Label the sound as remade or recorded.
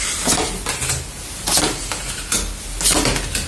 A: recorded